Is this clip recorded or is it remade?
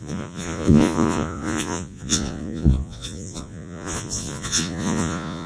remade